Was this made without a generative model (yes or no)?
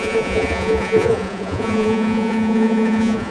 no